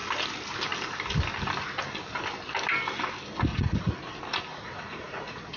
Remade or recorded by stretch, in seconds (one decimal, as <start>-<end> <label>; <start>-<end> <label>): 0.0-3.5 recorded; 3.5-4.1 remade; 4.1-4.5 recorded; 4.5-5.6 remade